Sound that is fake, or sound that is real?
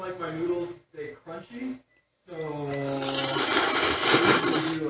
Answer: real